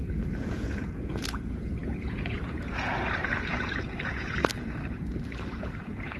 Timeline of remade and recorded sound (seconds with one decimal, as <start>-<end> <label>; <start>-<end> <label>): 0.0-4.5 remade; 4.5-5.6 recorded; 5.6-6.2 remade